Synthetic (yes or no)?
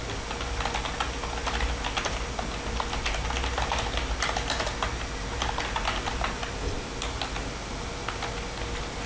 no